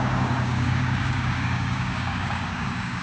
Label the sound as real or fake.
fake